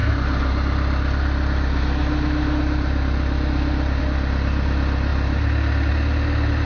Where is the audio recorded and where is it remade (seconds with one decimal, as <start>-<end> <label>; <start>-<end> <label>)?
0.0-6.7 recorded